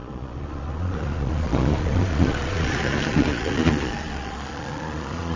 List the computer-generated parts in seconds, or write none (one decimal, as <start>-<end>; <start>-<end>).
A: 0.0-5.4